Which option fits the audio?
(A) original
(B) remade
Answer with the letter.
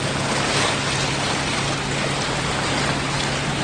A